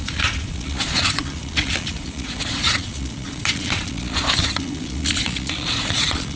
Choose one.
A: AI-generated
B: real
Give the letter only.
A